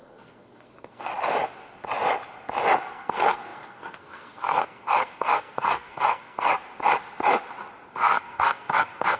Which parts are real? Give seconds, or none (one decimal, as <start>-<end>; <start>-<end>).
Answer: 1.1-2.9; 6.5-7.9